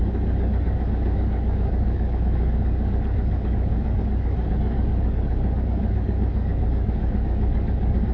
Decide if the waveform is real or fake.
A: fake